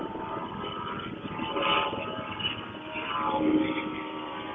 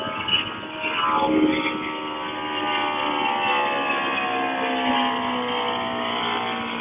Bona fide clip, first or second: second